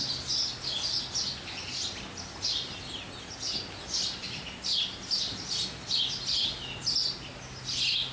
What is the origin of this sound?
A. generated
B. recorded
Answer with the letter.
B